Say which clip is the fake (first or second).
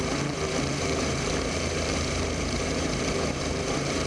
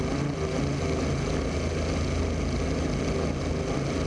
first